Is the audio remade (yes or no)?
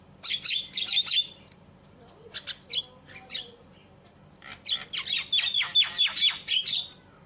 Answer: yes